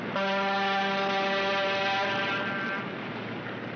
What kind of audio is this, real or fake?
real